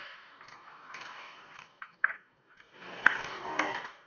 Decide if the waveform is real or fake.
fake